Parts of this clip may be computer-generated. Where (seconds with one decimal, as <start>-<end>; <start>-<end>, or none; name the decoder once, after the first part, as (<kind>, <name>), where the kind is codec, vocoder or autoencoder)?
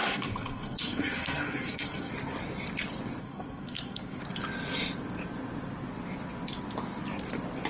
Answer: 0.0-2.1 (codec, SNAC); 3.2-4.2